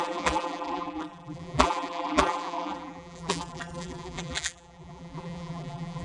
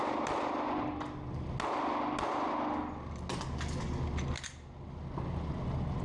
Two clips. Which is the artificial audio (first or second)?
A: first